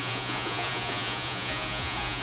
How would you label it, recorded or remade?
remade